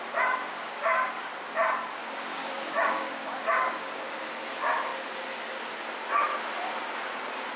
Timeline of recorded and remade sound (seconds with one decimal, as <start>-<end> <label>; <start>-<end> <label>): 0.0-0.5 recorded; 0.5-1.3 remade; 1.3-2.0 recorded; 2.0-4.2 remade; 4.2-7.6 recorded